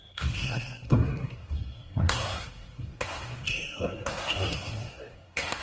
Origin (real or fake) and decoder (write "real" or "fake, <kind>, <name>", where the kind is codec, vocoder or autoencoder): fake, codec, SNAC